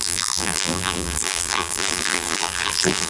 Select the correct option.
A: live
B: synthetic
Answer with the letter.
B